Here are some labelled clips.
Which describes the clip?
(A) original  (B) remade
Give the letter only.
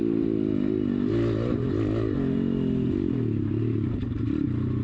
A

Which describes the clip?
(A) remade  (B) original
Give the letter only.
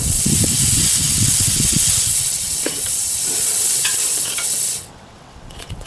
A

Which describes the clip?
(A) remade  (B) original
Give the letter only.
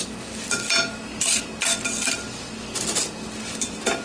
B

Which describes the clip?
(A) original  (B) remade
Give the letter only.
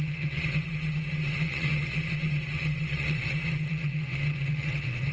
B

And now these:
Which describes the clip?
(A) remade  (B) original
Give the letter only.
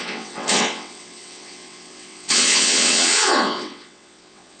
A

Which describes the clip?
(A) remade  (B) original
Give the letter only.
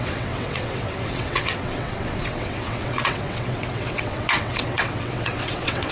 A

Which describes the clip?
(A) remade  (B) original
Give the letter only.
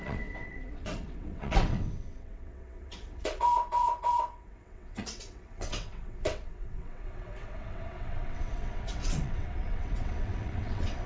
A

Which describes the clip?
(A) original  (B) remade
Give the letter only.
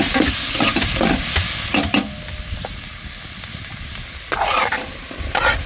A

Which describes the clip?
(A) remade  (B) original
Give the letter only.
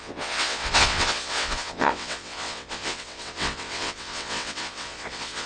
A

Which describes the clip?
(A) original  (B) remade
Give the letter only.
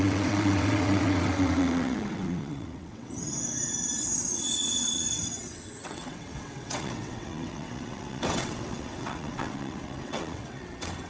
B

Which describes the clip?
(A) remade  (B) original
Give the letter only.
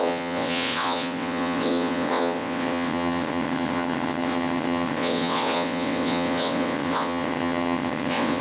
A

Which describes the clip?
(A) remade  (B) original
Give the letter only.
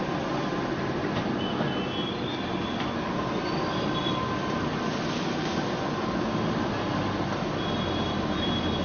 B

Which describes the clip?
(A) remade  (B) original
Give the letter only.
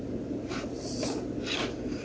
B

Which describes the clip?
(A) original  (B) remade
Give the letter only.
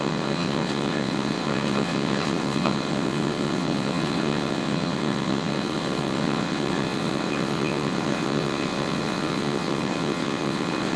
B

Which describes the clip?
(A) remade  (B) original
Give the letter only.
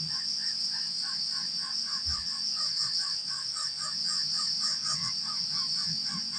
A